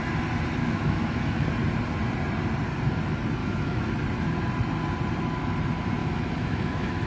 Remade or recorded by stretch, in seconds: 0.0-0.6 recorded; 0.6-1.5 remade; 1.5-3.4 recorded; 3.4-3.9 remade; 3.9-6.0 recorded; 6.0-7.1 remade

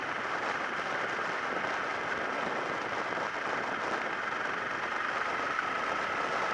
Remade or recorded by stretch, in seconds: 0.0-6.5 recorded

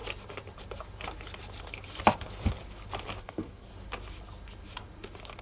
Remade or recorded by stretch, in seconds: 0.0-3.2 recorded; 3.2-3.7 remade; 3.7-5.4 recorded

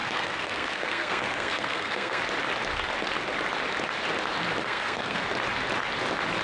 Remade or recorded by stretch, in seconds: 0.0-2.2 remade; 2.2-4.6 recorded; 4.6-5.2 remade; 5.2-6.4 recorded